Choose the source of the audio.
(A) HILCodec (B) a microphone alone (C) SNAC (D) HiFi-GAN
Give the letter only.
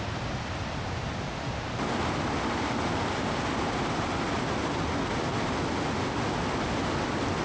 B